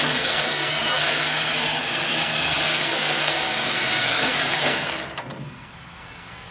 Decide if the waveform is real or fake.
fake